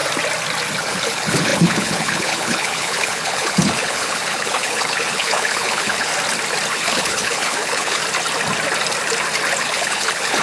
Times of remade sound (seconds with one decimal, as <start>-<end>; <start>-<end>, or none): 0.8-6.1; 6.7-8.0; 9.6-10.4